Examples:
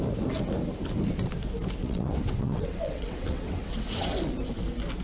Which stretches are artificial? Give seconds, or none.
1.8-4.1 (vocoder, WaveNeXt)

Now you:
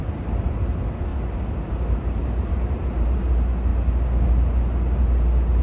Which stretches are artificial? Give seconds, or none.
2.2-3.3 (vocoder, BigVGAN v2)

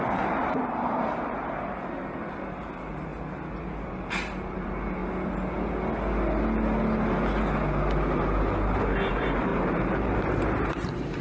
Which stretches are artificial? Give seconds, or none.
0.0-3.1 (vocoder, BigVGAN v2); 3.9-5.0; 9.1-11.2

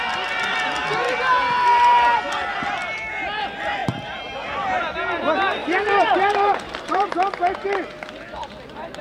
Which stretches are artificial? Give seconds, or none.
3.8-4.3 (vocoder, BigVGAN v2); 5.6-7.1

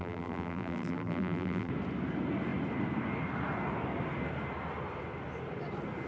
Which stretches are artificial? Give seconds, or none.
0.0-1.7 (vocoder, BigVGAN v2)